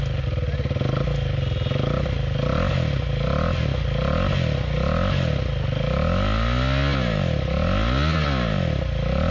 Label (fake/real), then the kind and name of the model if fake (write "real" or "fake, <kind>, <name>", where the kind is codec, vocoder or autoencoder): real